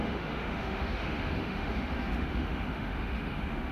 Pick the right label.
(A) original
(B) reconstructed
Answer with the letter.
B